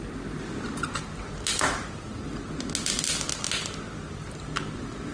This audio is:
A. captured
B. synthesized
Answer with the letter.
A